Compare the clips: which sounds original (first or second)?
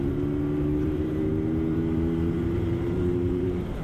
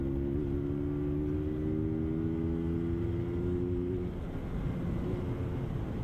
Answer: second